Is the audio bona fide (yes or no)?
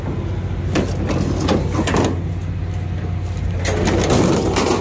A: yes